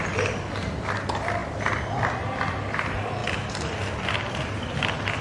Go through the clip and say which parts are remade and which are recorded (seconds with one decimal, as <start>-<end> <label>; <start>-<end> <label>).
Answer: 0.0-5.2 recorded